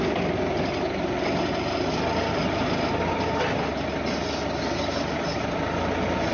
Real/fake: real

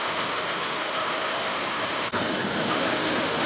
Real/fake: fake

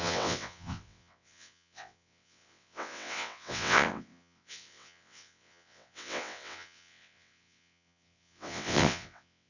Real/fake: fake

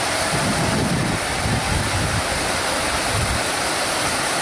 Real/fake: real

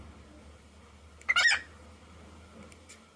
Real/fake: real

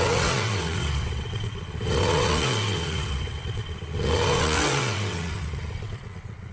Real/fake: fake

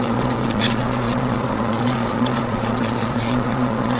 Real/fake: fake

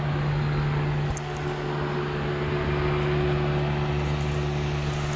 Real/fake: real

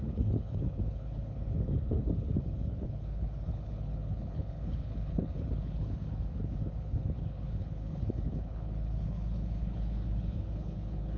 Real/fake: fake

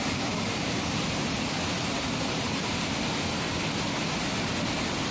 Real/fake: real